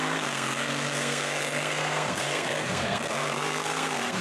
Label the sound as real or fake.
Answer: fake